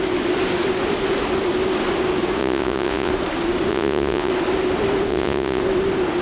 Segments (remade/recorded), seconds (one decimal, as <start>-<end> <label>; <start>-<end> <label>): 0.0-2.4 recorded; 2.4-3.1 remade; 3.1-3.7 recorded; 3.7-4.3 remade; 4.3-5.1 recorded; 5.1-5.6 remade; 5.6-6.2 recorded